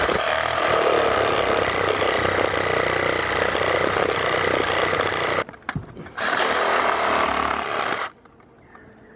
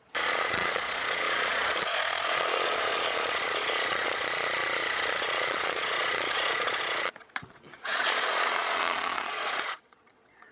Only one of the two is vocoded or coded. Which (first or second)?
second